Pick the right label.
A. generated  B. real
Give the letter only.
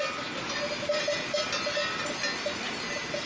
B